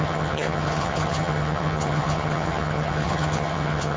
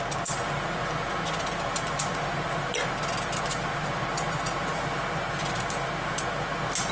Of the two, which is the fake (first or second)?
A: first